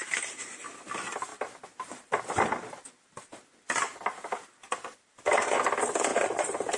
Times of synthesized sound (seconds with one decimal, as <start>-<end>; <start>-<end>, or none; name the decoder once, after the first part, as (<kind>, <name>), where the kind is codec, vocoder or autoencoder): 0.0-0.7 (vocoder, BigVGAN v2); 1.3-2.2; 6.1-6.8